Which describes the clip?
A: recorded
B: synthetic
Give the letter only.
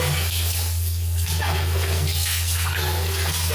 B